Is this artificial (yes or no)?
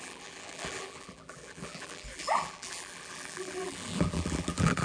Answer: yes